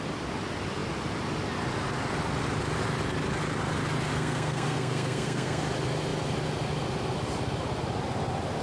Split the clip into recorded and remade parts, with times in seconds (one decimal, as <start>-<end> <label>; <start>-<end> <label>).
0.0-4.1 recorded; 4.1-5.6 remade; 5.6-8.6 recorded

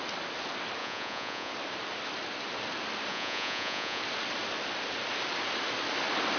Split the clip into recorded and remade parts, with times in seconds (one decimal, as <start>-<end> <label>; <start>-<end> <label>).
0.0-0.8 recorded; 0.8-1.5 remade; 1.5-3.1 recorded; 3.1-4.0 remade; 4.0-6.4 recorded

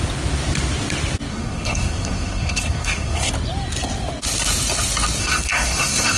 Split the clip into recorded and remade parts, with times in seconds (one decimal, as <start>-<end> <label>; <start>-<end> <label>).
0.0-1.3 recorded; 1.3-3.3 remade; 3.3-5.2 recorded; 5.2-6.2 remade